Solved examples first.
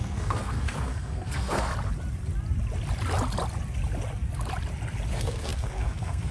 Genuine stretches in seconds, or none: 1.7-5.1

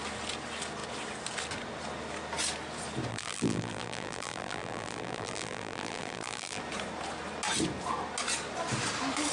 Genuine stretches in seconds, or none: 0.0-3.1; 6.6-9.3

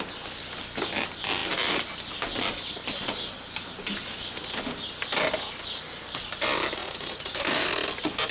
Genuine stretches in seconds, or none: 0.0-6.8; 7.3-8.3